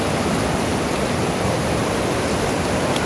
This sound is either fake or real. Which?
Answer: real